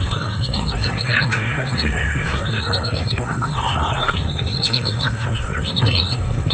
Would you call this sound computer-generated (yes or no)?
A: yes